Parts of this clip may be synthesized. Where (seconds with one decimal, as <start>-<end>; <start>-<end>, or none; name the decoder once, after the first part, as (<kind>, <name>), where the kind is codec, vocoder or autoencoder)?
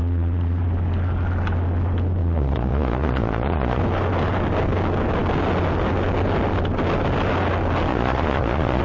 0.0-0.6 (vocoder, Vocos); 2.2-3.8; 7.9-8.8